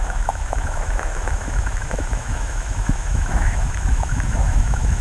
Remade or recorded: remade